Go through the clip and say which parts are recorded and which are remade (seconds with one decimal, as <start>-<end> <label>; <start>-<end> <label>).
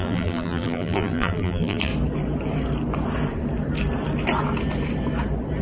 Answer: 0.0-1.9 remade; 1.9-5.6 recorded